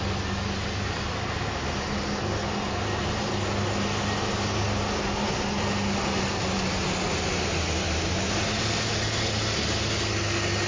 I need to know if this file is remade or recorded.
recorded